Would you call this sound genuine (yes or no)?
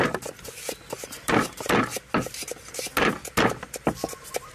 yes